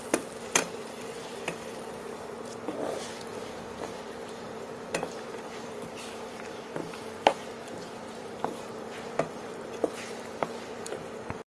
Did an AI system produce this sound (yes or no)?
yes